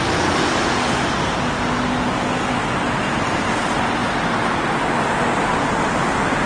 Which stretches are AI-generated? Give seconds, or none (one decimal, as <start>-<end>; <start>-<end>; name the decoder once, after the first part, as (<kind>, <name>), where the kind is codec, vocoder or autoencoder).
none